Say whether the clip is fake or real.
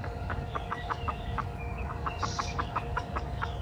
fake